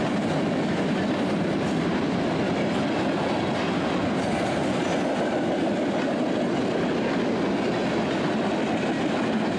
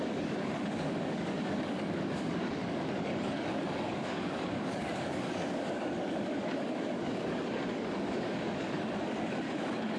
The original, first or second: first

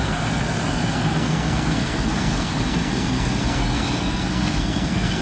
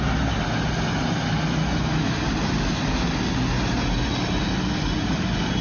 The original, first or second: second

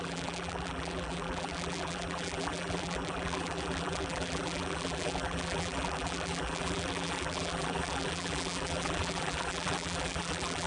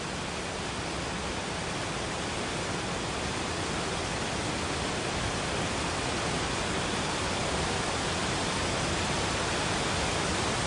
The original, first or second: second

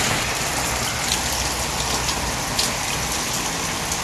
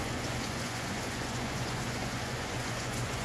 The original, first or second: first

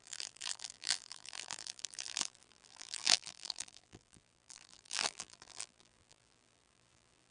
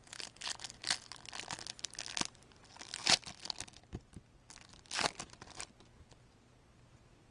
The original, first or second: second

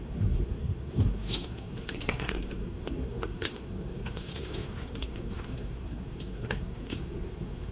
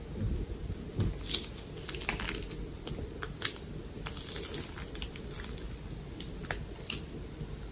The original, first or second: second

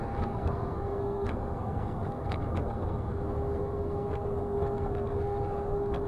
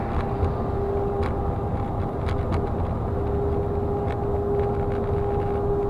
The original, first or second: second